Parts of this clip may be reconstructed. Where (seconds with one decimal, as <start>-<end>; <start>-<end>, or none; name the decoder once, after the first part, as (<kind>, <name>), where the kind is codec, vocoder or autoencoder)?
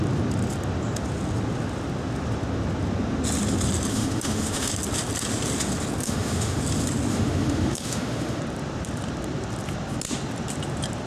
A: 3.9-4.7 (autoencoder, DAC-VAE); 6.0-6.6; 7.1-8.4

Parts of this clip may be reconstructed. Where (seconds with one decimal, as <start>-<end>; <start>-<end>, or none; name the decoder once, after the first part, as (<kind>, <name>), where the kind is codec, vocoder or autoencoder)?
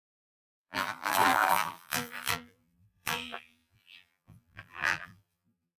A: 0.0-5.8 (vocoder, BigVGAN v2)